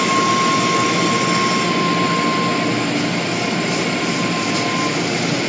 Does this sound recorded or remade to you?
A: recorded